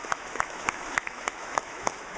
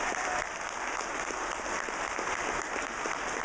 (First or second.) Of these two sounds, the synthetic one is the first